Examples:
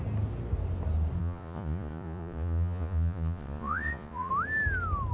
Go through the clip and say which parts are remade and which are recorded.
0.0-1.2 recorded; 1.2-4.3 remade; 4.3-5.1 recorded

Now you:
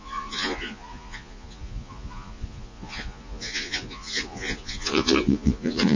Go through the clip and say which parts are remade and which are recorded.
0.0-6.0 remade

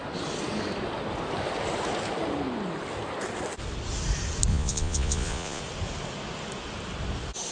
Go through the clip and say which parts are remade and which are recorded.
0.0-4.5 recorded; 4.5-5.6 remade; 5.6-7.5 recorded